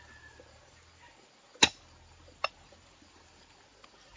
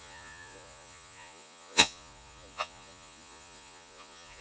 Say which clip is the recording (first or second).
first